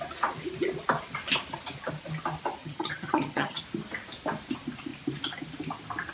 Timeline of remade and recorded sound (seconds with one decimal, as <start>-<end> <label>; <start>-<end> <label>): 0.0-2.6 recorded; 2.6-3.6 remade; 3.6-6.1 recorded